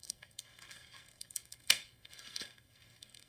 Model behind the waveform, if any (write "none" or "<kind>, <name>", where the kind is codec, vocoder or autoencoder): codec, SNAC